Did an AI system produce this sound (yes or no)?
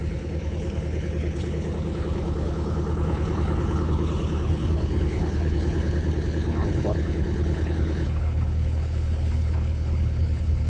yes